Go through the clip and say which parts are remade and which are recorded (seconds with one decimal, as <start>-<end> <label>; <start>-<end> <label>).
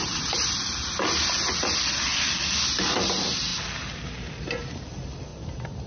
0.0-0.6 remade; 0.6-5.3 recorded; 5.3-5.9 remade